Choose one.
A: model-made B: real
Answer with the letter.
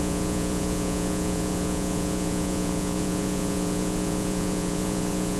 A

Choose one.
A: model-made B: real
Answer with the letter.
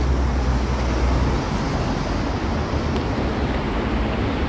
B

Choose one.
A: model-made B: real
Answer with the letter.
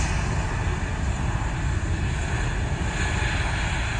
B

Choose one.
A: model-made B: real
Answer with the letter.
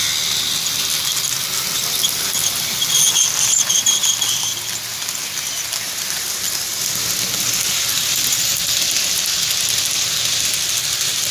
B